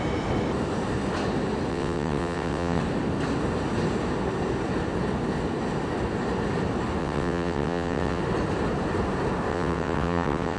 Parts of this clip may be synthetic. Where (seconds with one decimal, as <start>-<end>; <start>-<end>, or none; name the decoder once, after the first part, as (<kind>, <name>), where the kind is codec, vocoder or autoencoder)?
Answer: 1.7-2.8 (vocoder, WaveNeXt); 7.0-8.2; 9.5-10.6